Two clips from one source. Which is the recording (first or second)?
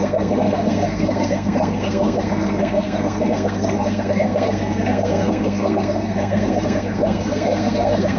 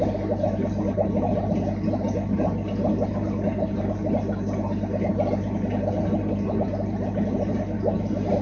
second